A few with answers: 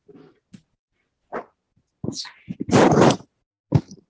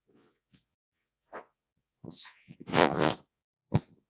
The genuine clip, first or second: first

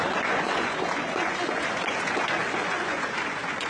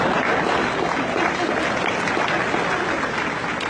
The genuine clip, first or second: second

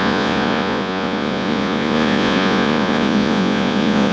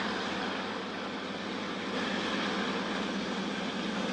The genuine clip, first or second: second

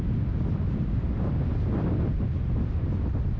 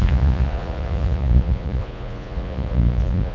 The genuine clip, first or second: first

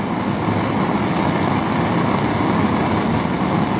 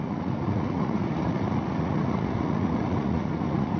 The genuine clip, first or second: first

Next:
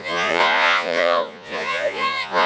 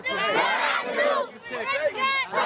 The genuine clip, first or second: second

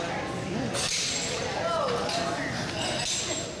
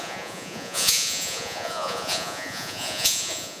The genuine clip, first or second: first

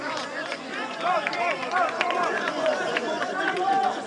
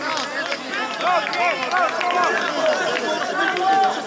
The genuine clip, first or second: second